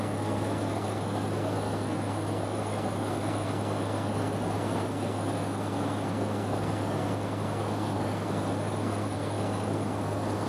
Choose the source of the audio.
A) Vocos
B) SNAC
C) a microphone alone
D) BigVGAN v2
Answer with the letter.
B